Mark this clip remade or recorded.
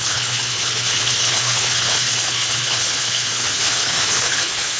remade